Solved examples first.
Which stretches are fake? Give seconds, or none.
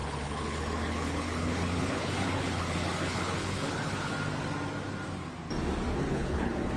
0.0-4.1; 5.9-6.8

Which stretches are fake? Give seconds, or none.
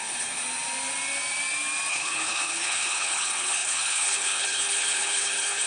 0.0-0.4; 1.9-5.7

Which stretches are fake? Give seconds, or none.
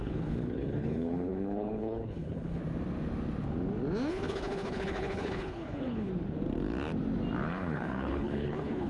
0.0-2.6; 4.1-6.1; 7.5-8.9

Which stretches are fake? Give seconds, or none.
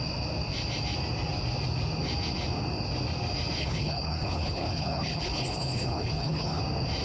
3.6-6.6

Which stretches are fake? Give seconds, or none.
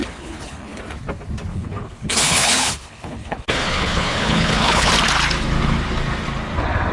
0.0-0.8; 1.5-4.9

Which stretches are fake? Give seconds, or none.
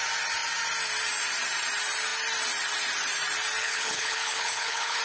3.6-5.0